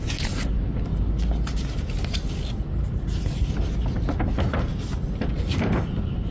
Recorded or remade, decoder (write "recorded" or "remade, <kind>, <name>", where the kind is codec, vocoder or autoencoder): recorded